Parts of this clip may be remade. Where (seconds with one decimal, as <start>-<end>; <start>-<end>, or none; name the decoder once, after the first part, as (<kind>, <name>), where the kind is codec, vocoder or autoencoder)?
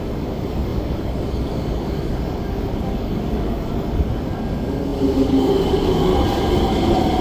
0.0-6.1 (codec, DAC)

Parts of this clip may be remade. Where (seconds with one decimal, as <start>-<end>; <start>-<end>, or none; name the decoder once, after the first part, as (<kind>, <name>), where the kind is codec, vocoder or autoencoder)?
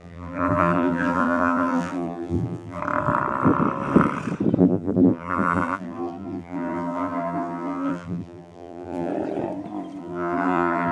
0.0-2.8 (vocoder, BigVGAN v2); 4.6-9.1; 10.0-10.9